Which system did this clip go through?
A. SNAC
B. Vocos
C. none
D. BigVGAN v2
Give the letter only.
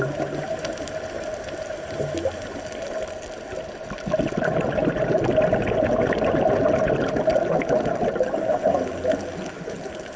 C